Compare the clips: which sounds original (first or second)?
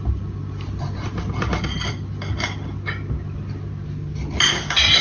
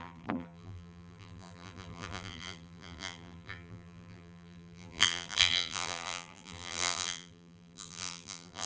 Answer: first